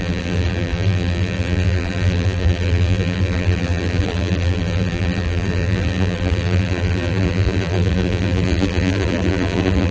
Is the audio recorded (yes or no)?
no